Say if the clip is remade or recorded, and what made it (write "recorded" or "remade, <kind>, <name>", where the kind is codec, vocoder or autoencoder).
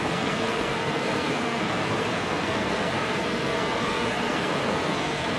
remade, codec, SNAC